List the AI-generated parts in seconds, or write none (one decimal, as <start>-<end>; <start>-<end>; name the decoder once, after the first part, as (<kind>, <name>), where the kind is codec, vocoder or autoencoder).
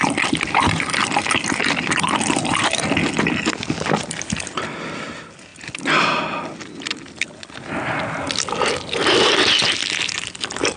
0.0-1.1 (vocoder, BigVGAN v2)